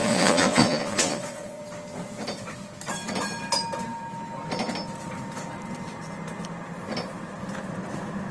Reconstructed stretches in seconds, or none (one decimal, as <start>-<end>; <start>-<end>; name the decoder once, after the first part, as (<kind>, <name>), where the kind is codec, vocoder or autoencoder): 0.0-1.6 (vocoder, Vocos)